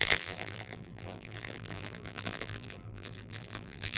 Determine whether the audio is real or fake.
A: fake